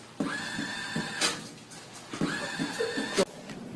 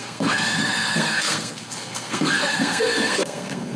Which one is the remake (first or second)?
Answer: second